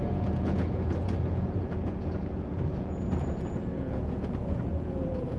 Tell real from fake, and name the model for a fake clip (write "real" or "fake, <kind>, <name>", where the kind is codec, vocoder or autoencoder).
fake, vocoder, Vocos